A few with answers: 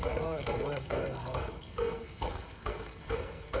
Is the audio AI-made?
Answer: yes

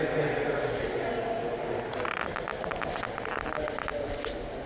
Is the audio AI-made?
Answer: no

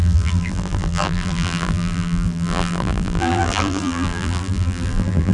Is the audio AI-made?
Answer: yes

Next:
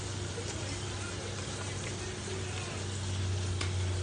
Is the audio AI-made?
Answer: no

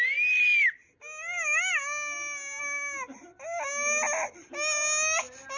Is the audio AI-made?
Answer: no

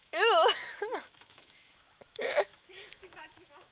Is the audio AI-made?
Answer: yes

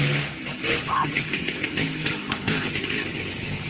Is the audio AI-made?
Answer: yes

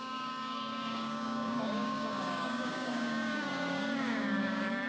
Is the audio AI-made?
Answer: yes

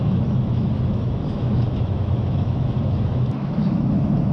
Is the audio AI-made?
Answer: yes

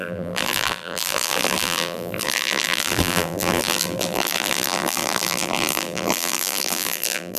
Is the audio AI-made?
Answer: yes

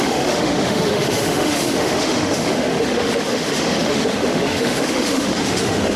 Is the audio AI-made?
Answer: yes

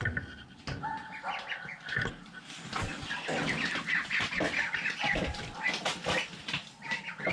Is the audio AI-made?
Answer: no